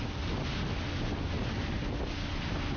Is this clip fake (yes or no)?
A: no